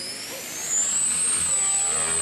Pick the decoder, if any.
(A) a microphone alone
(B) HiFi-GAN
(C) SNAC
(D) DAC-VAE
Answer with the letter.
A